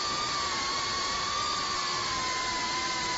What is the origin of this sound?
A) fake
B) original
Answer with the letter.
B